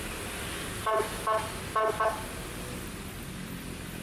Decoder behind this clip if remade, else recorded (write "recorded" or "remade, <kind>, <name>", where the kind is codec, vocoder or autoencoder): recorded